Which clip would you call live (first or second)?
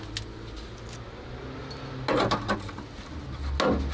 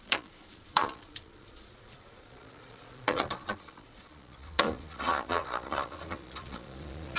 first